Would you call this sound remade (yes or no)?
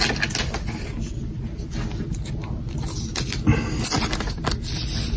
no